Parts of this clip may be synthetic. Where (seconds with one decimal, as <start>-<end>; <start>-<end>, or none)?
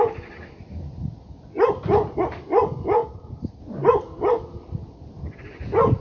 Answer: 3.0-3.6; 4.8-5.5